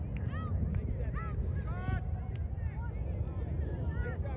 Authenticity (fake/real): real